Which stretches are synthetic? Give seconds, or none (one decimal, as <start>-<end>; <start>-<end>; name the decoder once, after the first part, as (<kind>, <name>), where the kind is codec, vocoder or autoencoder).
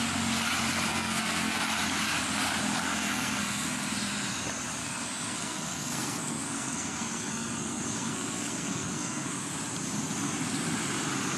0.9-1.6 (codec, SNAC); 2.8-3.9; 4.8-9.5